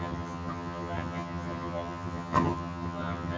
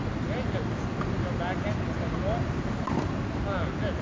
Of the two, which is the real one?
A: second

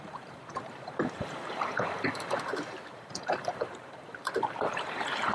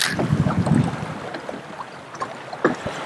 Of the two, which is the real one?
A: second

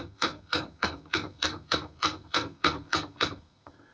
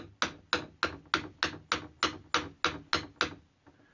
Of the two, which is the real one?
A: second